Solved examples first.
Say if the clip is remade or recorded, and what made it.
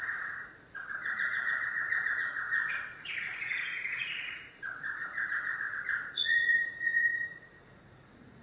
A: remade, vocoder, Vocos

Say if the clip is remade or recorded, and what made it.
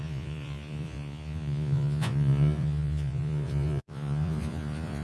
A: remade, vocoder, Vocos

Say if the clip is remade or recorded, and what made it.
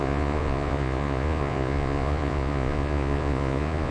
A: remade, vocoder, Vocos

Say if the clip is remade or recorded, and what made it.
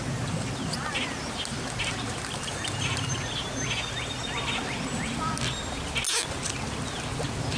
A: recorded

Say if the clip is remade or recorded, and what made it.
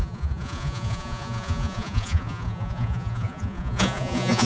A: remade, vocoder, Vocos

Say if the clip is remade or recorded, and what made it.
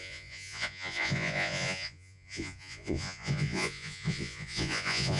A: remade, vocoder, Vocos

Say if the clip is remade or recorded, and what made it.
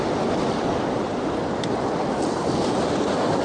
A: recorded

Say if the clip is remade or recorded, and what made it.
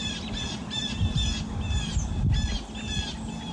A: recorded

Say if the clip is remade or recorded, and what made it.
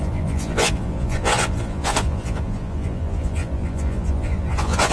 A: remade, vocoder, Vocos